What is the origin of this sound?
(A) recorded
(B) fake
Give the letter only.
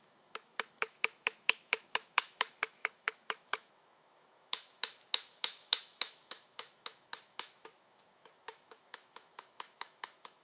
B